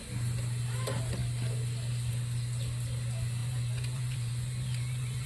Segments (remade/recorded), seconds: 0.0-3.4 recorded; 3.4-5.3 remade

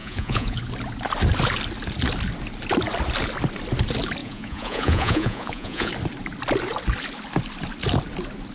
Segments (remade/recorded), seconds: 0.0-0.6 remade; 0.6-4.2 recorded; 4.2-5.9 remade; 5.9-8.5 recorded

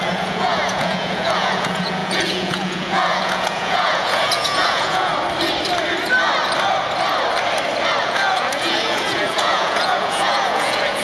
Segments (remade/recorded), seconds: 0.0-5.1 remade; 5.1-8.0 recorded; 8.0-11.0 remade

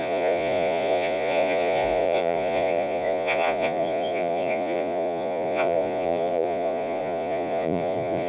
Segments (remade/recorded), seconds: 0.0-8.3 remade

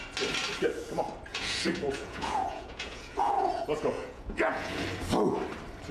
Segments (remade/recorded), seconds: 0.0-1.3 recorded; 1.3-4.8 remade; 4.8-5.9 recorded